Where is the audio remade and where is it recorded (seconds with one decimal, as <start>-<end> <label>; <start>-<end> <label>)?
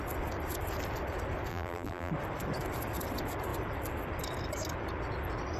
0.0-1.5 recorded; 1.5-2.1 remade; 2.1-5.6 recorded